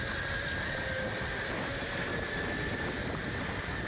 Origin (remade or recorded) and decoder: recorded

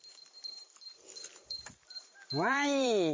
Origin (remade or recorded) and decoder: remade, vocoder, BigVGAN v2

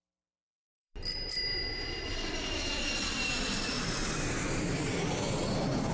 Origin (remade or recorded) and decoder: remade, vocoder, BigVGAN v2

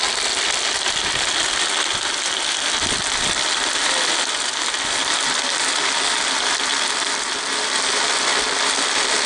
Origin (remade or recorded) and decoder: recorded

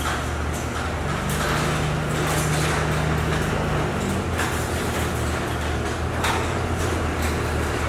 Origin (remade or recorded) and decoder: recorded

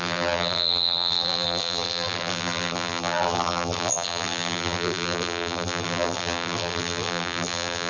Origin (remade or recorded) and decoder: remade, vocoder, BigVGAN v2